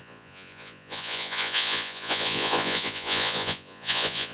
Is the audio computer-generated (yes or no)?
yes